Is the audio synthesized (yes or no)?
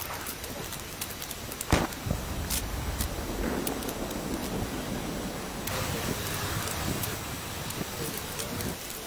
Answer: no